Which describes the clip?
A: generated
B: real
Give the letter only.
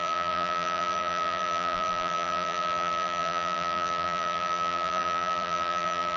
A